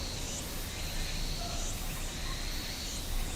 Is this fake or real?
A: real